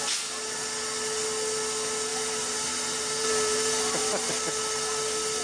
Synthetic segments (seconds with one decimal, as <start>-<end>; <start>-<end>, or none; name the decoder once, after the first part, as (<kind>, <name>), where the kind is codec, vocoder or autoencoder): 2.1-4.3 (vocoder, BigVGAN v2)